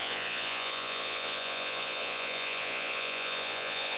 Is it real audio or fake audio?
fake